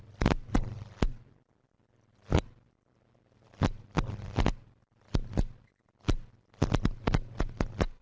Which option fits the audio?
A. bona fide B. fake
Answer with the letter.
A